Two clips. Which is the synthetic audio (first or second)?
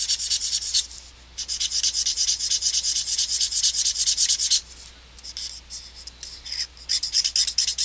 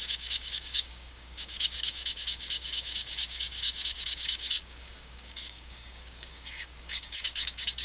second